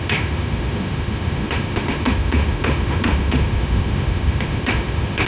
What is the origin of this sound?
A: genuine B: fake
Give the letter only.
B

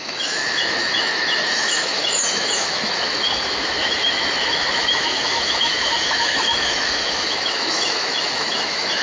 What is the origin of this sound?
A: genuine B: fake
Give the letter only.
B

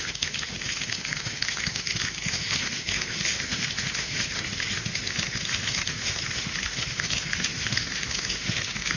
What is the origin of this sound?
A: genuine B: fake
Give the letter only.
B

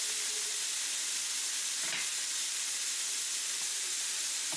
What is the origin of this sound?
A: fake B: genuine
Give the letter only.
B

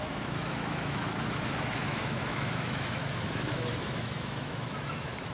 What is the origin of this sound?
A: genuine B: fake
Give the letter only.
B